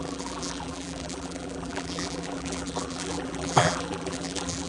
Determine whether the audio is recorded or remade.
remade